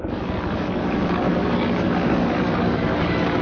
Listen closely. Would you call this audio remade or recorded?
remade